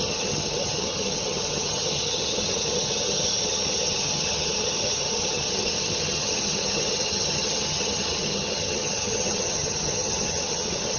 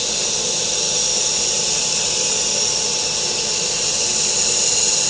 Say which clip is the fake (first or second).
first